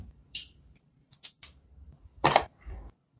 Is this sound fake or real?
fake